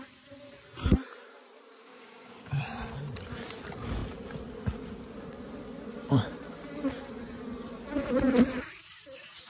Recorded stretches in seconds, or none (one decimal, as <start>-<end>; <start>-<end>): 0.0-1.9; 2.6-9.5